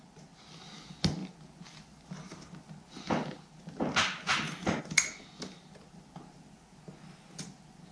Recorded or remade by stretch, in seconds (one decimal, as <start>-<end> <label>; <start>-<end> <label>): 0.0-7.9 recorded